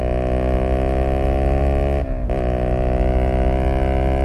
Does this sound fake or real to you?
real